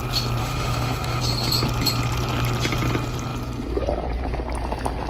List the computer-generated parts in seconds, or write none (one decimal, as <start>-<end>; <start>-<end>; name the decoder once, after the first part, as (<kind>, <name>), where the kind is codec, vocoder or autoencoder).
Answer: 0.4-1.2 (autoencoder, DAC-VAE)